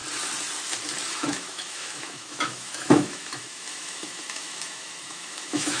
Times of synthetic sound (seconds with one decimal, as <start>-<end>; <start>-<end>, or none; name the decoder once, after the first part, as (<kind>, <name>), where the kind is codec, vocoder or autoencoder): 1.1-5.8 (autoencoder, DAC-VAE)